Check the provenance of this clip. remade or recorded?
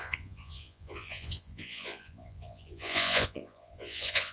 remade